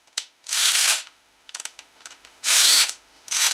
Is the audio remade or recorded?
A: remade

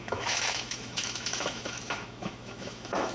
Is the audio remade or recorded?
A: remade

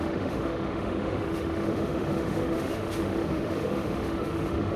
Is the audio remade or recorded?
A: remade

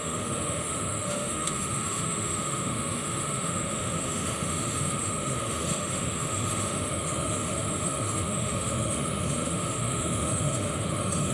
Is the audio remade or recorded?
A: remade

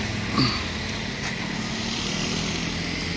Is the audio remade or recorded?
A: recorded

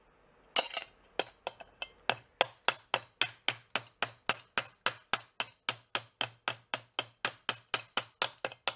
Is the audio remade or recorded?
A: recorded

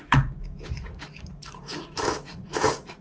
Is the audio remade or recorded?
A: remade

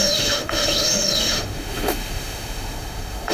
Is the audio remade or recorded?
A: remade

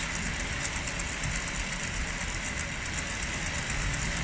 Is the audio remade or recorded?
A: recorded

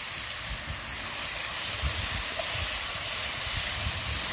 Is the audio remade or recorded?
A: recorded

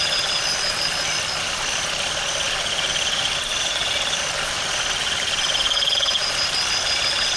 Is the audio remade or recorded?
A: recorded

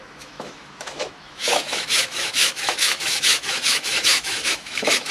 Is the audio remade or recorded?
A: remade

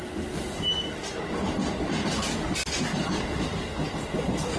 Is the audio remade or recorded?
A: recorded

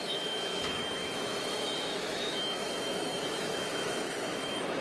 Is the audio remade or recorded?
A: remade